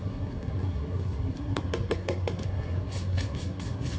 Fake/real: fake